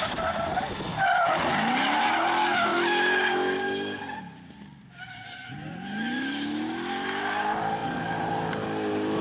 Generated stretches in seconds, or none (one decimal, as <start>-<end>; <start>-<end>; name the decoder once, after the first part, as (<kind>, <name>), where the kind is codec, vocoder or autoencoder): 0.9-1.4 (vocoder, BigVGAN v2)